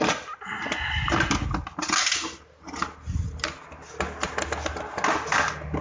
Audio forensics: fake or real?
real